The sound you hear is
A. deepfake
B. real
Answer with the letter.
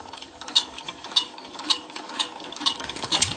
A